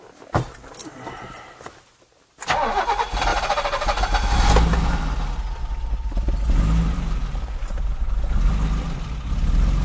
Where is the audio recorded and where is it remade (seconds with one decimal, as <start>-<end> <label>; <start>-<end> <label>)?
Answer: 0.0-9.8 recorded